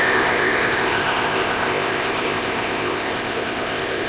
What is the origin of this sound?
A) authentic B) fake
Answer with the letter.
B